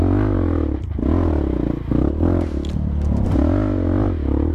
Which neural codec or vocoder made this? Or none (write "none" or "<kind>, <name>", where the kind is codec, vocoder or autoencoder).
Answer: none